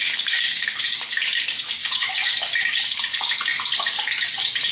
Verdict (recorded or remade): remade